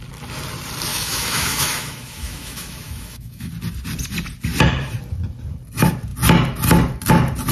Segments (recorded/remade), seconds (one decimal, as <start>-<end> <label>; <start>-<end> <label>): 0.0-0.9 recorded; 0.9-3.5 remade; 3.5-7.5 recorded